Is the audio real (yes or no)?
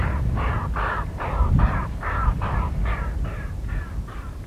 no